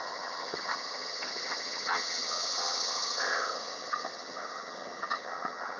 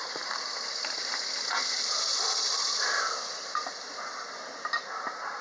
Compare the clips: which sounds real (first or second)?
second